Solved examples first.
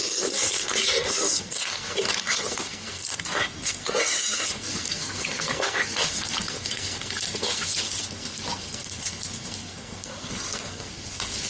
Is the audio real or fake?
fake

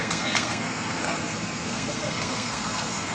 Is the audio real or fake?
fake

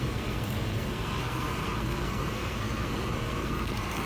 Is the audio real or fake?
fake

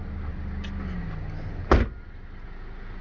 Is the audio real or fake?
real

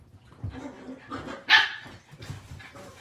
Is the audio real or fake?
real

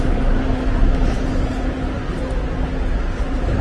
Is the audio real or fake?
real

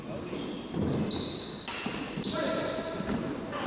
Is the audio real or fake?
real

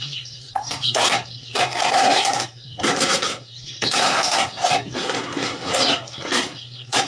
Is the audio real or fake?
fake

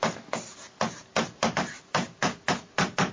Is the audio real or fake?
real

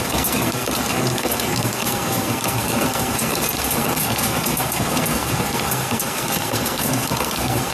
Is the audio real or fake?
fake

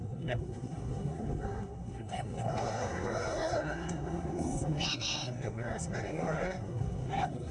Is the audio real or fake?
fake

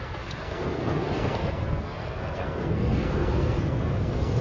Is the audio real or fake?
fake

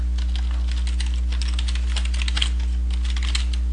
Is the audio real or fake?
real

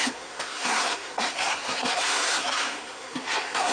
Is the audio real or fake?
fake